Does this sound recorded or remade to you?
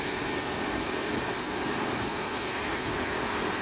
recorded